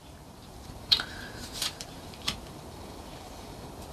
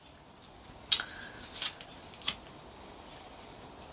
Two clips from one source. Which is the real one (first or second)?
second